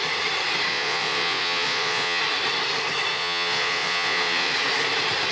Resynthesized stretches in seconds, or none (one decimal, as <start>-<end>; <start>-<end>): 0.7-2.2; 3.1-4.5